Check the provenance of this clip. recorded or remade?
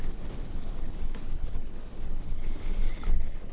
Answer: remade